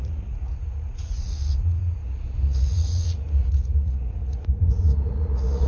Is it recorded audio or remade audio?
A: remade